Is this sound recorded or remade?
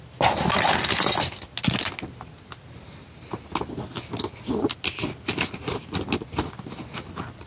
recorded